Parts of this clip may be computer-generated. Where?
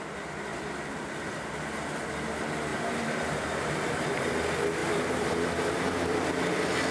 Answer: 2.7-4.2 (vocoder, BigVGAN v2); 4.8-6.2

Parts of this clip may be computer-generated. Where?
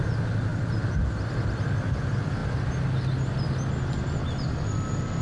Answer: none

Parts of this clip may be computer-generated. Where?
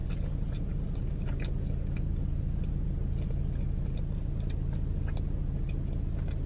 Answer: none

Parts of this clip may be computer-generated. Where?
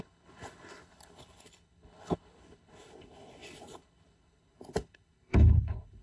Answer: 0.0-6.0 (codec, HILCodec)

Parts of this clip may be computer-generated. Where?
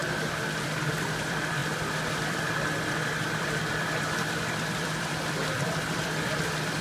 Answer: 0.9-1.6 (vocoder, BigVGAN v2); 2.1-6.8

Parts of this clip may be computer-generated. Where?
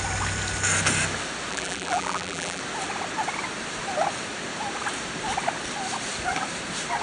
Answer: 1.5-2.6 (vocoder, BigVGAN v2)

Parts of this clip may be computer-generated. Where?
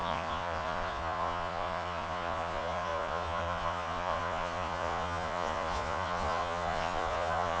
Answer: 0.0-7.6 (vocoder, Vocos)